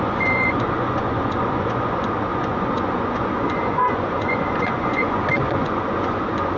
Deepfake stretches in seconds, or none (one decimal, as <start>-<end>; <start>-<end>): 0.0-6.6